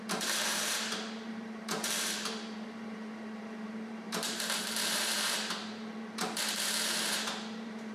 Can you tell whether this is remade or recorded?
remade